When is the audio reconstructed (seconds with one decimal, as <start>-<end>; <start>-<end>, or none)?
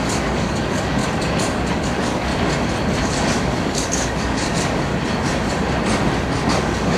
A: 0.0-1.0; 1.7-2.3; 3.0-4.9; 6.5-7.0